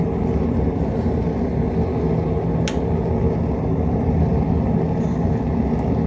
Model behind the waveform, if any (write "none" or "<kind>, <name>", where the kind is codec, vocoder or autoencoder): none